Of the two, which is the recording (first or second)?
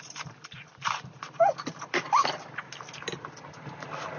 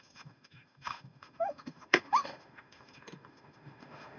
first